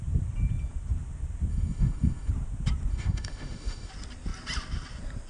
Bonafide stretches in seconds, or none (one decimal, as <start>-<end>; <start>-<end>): 0.0-1.5; 2.3-2.9; 3.9-5.3